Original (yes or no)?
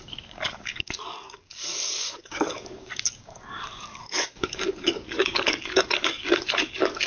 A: no